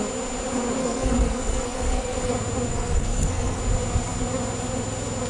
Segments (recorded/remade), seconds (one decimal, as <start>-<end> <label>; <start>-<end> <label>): 0.0-0.8 recorded; 0.8-2.3 remade; 2.3-2.7 recorded; 2.7-3.6 remade; 3.6-5.3 recorded